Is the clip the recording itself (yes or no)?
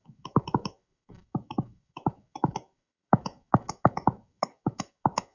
no